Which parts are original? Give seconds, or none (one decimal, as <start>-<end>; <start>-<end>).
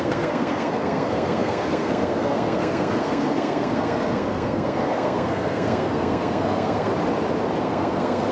6.9-7.6